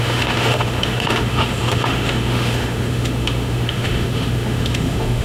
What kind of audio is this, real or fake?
fake